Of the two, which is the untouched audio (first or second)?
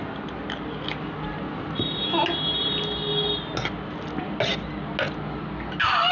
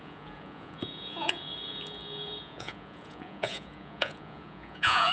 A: first